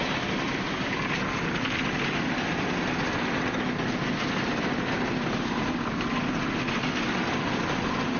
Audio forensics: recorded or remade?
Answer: recorded